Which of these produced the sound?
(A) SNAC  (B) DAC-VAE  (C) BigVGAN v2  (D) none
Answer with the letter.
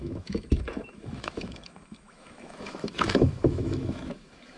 B